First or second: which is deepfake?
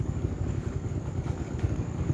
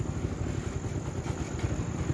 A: first